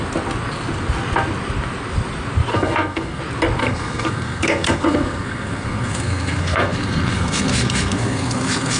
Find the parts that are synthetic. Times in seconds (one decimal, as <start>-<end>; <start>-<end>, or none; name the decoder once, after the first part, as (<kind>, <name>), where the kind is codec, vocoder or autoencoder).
2.5-3.2 (codec, SNAC); 3.6-8.8